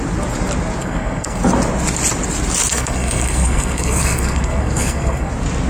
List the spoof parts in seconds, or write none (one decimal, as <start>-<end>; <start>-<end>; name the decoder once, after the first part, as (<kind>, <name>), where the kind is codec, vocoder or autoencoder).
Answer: 0.8-1.4 (codec, SNAC); 2.7-5.3